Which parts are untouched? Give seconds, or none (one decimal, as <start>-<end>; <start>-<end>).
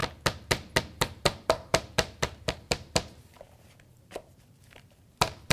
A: 0.0-0.8